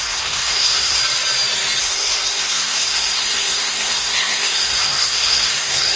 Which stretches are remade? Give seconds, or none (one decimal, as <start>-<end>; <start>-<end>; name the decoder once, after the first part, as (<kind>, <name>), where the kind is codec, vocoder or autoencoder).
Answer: 0.0-1.0 (codec, SNAC); 1.8-6.0